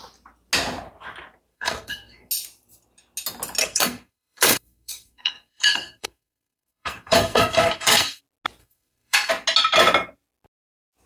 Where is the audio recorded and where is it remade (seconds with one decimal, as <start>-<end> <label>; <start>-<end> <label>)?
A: 0.0-1.5 recorded; 1.5-2.3 remade; 2.3-3.6 recorded; 3.6-8.2 remade; 8.2-8.6 recorded; 8.6-9.3 remade; 9.3-11.1 recorded